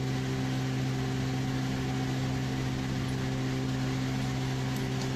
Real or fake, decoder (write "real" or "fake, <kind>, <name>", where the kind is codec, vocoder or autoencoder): real